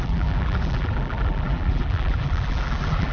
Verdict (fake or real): fake